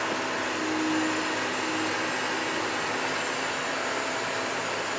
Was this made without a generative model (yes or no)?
yes